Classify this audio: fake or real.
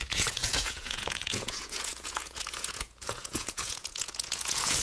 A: fake